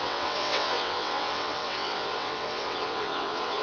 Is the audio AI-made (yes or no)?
yes